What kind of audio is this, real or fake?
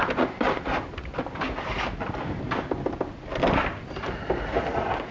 real